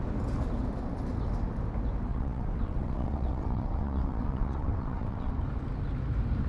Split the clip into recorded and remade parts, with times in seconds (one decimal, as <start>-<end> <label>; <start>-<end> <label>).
0.0-2.1 recorded; 2.1-5.3 remade; 5.3-6.5 recorded